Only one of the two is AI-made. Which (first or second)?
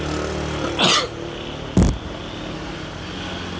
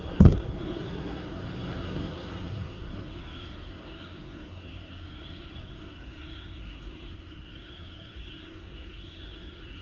second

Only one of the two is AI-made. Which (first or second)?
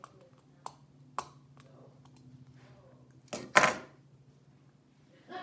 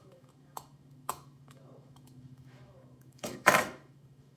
second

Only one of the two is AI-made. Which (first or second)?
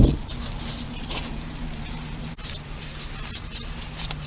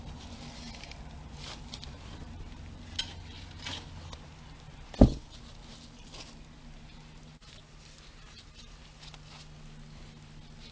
first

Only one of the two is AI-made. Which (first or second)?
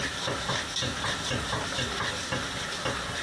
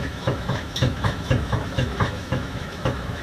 second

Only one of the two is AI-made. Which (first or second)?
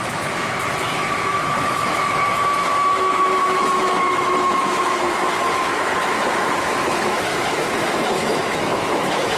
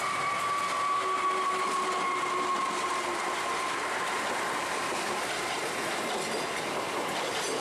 first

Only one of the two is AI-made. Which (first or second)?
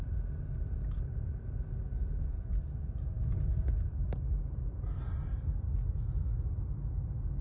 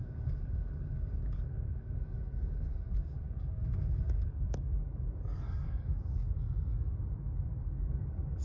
second